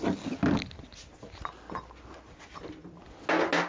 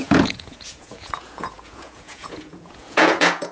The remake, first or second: second